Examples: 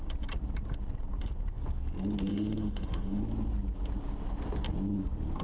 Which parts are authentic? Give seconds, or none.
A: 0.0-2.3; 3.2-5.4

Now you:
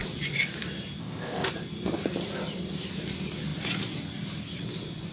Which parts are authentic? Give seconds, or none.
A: 0.0-1.0; 1.5-5.1

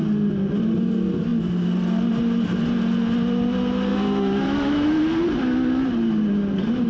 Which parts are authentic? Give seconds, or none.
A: 0.0-3.9; 4.9-6.9

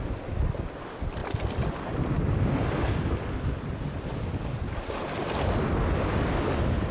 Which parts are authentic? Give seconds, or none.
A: 0.0-6.9